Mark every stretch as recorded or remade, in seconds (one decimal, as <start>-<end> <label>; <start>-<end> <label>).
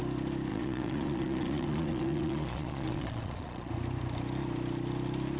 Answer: 0.0-0.5 recorded; 0.5-3.7 remade; 3.7-5.4 recorded